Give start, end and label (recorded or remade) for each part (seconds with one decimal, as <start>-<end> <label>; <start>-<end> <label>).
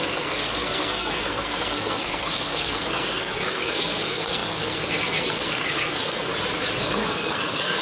0.0-6.3 remade; 6.3-6.8 recorded; 6.8-7.8 remade